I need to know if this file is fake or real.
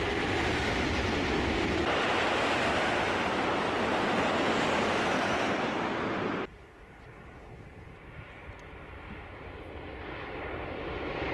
real